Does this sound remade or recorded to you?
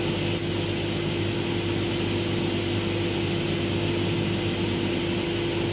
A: recorded